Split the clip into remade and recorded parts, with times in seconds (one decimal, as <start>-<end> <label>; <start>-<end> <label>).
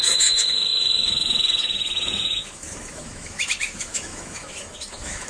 0.0-5.3 remade